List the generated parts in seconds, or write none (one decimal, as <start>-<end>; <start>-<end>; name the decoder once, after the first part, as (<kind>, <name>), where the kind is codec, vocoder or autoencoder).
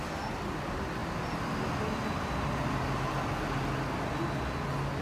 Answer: none